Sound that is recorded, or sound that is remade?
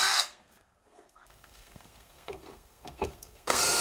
remade